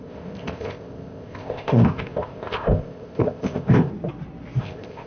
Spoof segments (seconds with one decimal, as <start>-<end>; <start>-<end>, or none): 0.0-3.9; 4.6-5.1